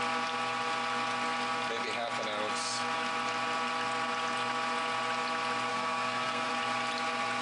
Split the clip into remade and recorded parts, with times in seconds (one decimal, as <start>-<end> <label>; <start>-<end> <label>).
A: 0.0-5.7 recorded; 5.7-6.5 remade; 6.5-7.4 recorded